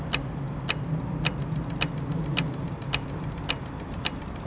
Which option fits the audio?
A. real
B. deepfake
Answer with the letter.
A